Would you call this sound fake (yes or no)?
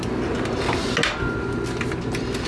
no